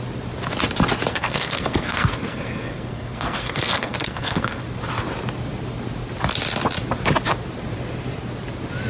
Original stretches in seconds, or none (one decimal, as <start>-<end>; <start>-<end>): 0.0-1.1; 4.6-8.9